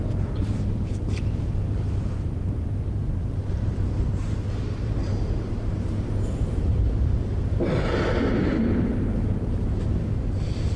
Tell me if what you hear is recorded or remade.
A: remade